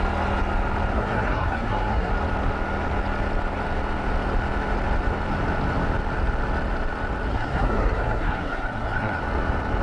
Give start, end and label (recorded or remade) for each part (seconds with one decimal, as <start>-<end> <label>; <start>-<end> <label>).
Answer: 0.0-0.9 recorded; 0.9-2.1 remade; 2.1-7.3 recorded; 7.3-9.2 remade; 9.2-9.8 recorded